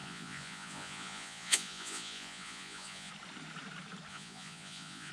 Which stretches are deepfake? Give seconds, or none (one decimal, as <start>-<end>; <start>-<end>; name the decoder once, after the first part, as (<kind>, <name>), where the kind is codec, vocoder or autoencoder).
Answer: 0.0-3.1 (vocoder, Vocos); 4.1-5.1

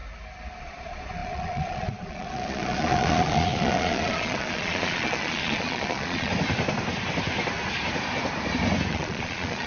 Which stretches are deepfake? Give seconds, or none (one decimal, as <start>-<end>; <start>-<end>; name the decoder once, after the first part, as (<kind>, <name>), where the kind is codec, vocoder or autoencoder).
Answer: 0.6-6.3 (vocoder, Vocos); 8.9-9.7

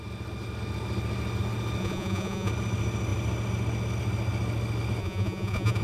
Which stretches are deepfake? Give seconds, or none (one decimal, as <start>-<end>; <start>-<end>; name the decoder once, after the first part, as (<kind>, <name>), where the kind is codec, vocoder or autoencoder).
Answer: 1.8-2.5 (vocoder, Vocos); 5.0-5.8

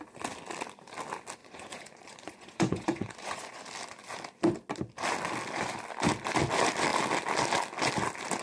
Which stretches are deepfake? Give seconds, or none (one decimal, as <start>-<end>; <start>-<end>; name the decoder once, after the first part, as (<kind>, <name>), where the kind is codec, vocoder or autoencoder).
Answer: 1.4-3.6 (vocoder, Vocos)

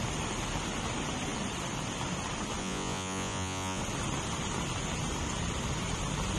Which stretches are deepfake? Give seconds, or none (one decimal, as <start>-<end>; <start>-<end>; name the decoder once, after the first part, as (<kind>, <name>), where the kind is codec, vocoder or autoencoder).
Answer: 2.6-3.8 (vocoder, Vocos)

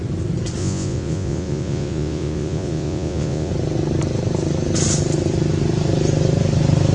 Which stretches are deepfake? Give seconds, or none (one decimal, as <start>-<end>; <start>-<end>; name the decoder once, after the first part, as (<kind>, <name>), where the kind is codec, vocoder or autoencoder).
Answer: 0.6-3.5 (vocoder, Vocos)